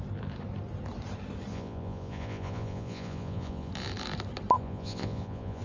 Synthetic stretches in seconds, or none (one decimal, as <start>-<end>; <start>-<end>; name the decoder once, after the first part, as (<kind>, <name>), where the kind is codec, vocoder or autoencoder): 1.5-3.7 (vocoder, Vocos); 4.6-5.6